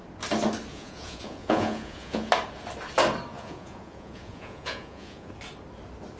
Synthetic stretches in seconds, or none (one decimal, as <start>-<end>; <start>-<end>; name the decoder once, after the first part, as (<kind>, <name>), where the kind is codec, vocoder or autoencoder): 0.7-2.3 (vocoder, Vocos); 3.3-5.3